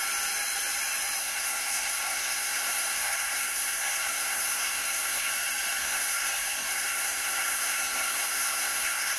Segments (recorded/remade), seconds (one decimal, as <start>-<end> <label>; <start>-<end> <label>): 0.0-1.2 recorded; 1.2-5.3 remade; 5.3-5.8 recorded; 5.8-9.2 remade